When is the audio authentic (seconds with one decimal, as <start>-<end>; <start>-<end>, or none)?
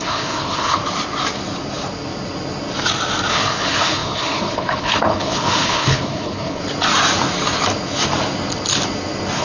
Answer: 0.8-3.3; 6.6-9.4